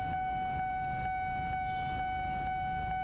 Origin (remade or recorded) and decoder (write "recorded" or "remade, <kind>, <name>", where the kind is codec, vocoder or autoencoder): recorded